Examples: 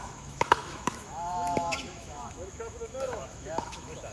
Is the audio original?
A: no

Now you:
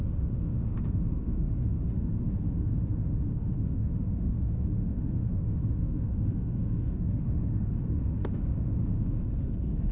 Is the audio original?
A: no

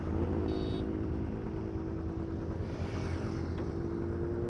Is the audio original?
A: yes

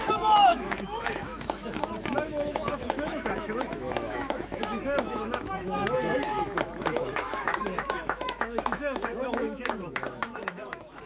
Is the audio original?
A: no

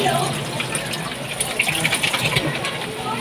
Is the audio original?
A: yes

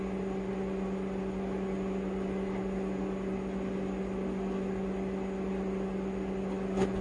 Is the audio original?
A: yes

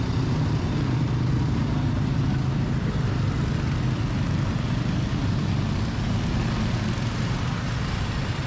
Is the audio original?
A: yes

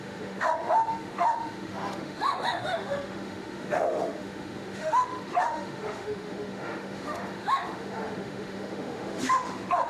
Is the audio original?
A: no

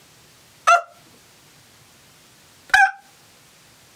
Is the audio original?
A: yes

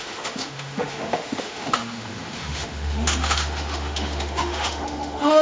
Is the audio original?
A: no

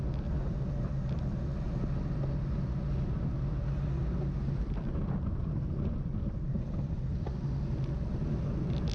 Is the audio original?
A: yes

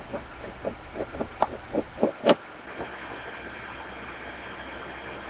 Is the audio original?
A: yes